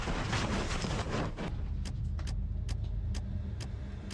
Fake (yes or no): no